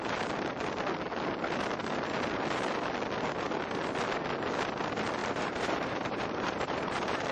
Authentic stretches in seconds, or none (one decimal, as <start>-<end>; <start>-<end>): 0.0-5.2